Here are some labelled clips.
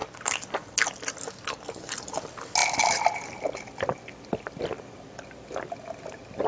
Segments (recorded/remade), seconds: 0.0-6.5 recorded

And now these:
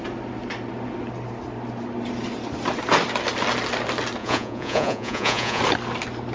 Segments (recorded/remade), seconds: 0.0-4.2 recorded; 4.2-5.6 remade; 5.6-6.3 recorded

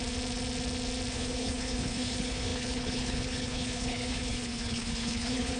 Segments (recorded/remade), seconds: 0.0-1.1 recorded; 1.1-5.6 remade